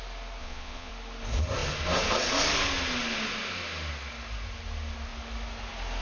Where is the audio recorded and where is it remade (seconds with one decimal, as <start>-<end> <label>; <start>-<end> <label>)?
0.0-0.4 recorded; 0.4-0.9 remade; 0.9-6.0 recorded

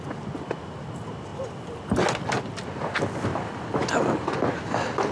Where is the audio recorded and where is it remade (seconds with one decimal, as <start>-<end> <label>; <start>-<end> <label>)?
0.0-5.1 recorded

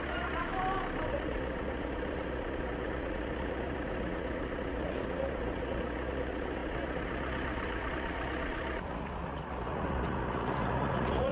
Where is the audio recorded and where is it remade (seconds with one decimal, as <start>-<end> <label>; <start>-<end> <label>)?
0.0-0.5 remade; 0.5-1.1 recorded; 1.1-11.3 remade